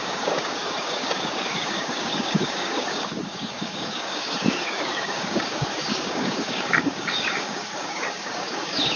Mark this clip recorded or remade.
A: remade